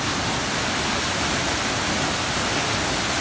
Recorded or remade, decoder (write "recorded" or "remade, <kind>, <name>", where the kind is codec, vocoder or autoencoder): recorded